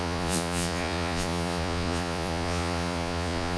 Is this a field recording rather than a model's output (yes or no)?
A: no